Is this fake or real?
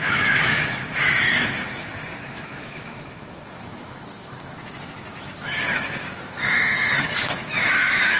fake